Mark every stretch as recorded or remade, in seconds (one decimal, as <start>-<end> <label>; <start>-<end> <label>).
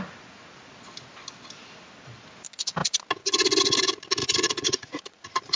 0.0-4.2 recorded; 4.2-5.5 remade